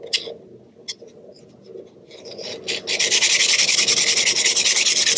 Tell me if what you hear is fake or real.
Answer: real